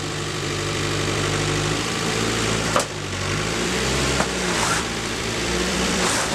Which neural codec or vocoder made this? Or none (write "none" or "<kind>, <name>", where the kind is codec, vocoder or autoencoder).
vocoder, BigVGAN v2